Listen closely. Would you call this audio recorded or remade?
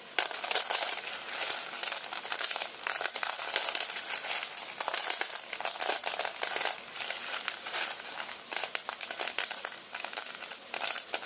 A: recorded